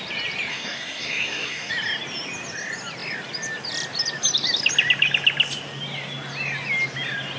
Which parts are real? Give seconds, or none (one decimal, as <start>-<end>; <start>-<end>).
0.0-0.5; 1.7-7.4